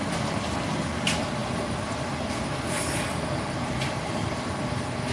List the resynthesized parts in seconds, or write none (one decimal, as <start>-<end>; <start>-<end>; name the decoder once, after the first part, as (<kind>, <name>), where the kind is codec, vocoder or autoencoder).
1.4-4.5 (vocoder, BigVGAN v2)